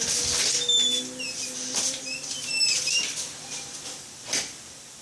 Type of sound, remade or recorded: recorded